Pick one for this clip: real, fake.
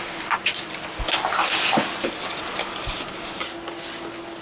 real